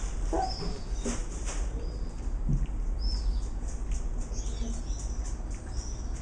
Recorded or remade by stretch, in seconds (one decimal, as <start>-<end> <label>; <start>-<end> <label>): 0.0-6.2 recorded